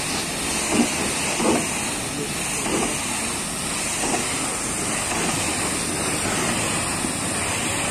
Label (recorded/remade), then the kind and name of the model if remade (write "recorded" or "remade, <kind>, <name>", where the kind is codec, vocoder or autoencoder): recorded